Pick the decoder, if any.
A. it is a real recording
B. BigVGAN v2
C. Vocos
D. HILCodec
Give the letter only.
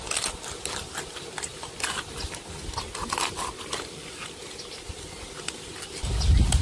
A